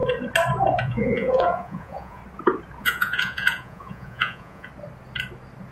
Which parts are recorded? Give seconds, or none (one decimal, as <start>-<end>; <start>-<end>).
0.0-0.8; 2.2-2.8; 4.7-5.7